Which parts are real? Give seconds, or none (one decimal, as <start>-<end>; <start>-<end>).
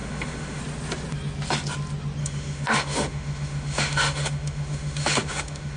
0.6-2.2